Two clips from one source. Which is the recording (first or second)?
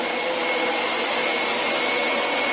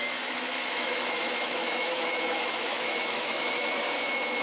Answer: first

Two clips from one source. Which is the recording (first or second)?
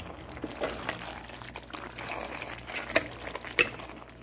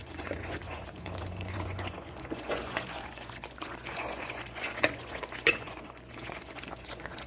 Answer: first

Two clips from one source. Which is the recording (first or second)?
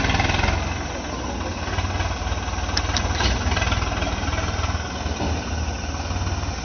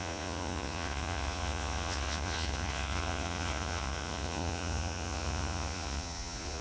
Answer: first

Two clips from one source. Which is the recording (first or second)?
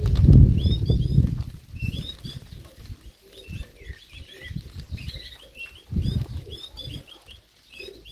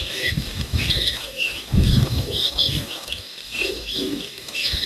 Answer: first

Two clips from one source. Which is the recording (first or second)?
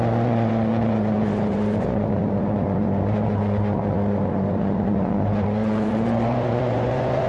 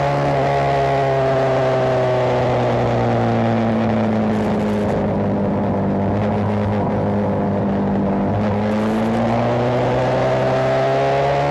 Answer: second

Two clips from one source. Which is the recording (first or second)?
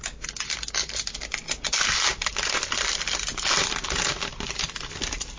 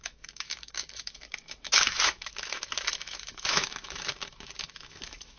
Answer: first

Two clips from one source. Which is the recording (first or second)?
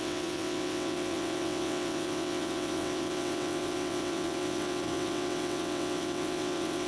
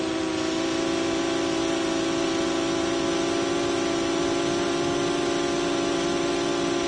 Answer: second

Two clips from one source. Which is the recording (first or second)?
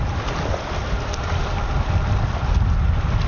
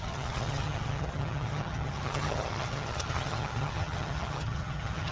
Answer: first